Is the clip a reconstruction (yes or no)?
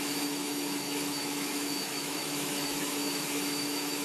yes